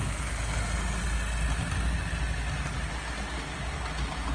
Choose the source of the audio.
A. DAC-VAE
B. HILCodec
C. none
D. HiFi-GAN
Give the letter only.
C